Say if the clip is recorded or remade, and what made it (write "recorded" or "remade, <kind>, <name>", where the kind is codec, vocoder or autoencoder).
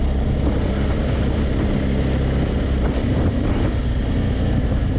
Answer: recorded